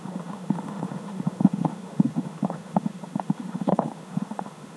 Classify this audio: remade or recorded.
remade